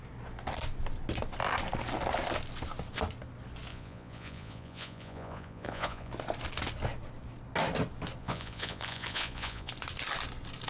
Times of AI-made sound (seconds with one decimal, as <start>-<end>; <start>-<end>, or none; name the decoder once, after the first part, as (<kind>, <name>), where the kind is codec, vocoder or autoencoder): 3.7-6.1 (vocoder, Vocos); 8.2-9.7